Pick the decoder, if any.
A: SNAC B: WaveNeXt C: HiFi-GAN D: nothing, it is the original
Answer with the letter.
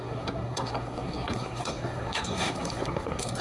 A